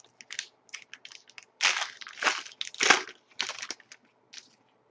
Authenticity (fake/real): real